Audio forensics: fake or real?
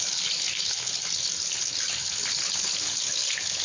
fake